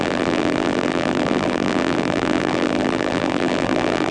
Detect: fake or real fake